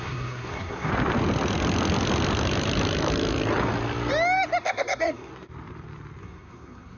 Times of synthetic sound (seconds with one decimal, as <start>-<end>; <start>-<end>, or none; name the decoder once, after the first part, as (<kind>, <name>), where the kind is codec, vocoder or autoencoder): 0.0-0.9 (codec, SNAC); 4.6-5.3; 6.2-7.0